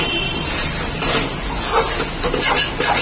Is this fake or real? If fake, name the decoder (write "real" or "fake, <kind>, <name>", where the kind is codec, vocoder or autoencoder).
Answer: real